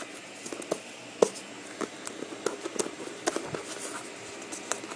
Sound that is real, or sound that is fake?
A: real